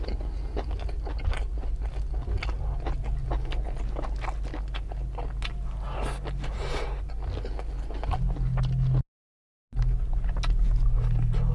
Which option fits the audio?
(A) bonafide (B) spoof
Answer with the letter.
A